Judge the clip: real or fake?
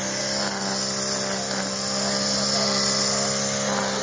real